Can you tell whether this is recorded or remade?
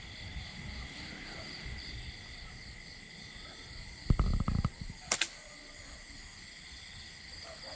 recorded